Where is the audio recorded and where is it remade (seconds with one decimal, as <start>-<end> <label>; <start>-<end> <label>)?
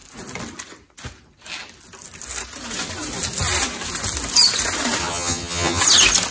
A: 0.0-5.0 recorded; 5.0-5.8 remade; 5.8-6.3 recorded